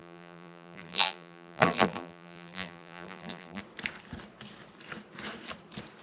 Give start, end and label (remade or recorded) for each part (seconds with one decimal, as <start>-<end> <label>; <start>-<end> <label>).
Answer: 0.0-3.6 remade; 3.6-6.0 recorded